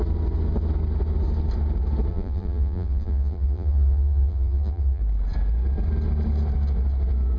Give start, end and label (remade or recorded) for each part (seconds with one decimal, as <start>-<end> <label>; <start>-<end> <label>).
0.0-2.1 recorded; 2.1-5.0 remade; 5.0-7.4 recorded